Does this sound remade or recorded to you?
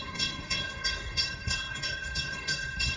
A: remade